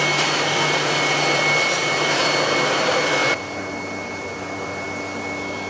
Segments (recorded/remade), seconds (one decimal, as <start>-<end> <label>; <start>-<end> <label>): 0.0-5.7 recorded